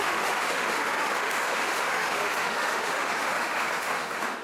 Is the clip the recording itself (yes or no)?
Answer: no